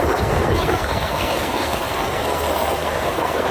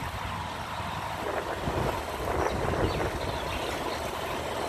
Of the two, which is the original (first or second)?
second